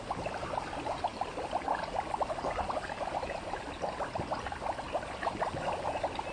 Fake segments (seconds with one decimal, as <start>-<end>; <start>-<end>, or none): none